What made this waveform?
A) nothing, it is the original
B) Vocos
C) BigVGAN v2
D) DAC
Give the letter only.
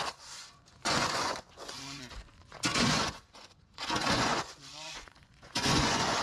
B